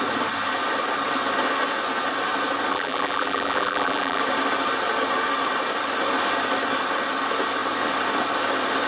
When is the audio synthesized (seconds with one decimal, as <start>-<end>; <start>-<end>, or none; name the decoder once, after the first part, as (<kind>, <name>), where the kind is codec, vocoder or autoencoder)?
2.7-4.2 (vocoder, BigVGAN v2)